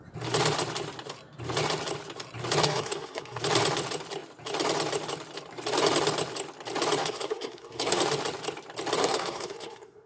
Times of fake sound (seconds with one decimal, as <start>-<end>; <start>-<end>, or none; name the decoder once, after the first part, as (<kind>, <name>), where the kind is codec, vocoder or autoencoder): 2.6-3.4 (codec, SNAC); 7.0-8.0; 9.0-10.1

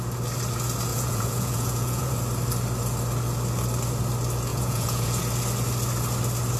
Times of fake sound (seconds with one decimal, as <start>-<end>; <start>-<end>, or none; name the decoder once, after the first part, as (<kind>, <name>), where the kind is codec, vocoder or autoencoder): 0.9-2.1 (vocoder, Vocos); 4.5-5.2

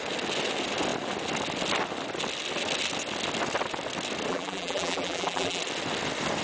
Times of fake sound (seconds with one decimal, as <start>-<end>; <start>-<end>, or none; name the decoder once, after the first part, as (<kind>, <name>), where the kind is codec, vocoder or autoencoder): 4.3-5.6 (vocoder, BigVGAN v2)

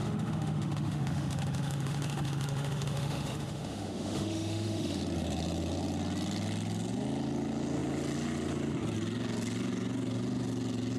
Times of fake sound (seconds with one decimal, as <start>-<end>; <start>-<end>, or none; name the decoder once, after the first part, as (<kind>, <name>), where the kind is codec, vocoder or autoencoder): 0.0-5.0 (autoencoder, DAC-VAE)

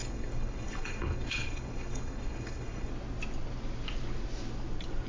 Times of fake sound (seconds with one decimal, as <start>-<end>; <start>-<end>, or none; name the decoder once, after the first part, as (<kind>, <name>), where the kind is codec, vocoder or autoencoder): 0.0-2.9 (codec, HILCodec)

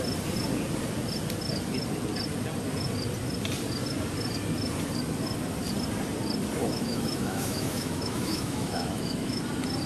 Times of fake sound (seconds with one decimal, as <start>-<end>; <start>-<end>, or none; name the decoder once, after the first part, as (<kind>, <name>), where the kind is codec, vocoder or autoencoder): 6.6-9.4 (autoencoder, DAC-VAE)

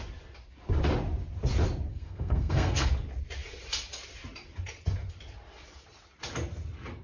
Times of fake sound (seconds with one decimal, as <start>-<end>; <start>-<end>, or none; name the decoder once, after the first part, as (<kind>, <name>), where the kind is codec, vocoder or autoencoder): 1.9-2.9 (codec, SNAC)

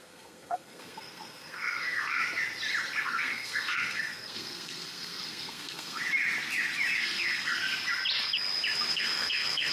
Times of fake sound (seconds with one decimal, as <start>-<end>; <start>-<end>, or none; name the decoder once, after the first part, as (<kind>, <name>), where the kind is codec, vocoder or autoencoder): 0.0-2.2 (codec, SNAC); 3.0-6.0; 7.0-7.6; 8.9-9.7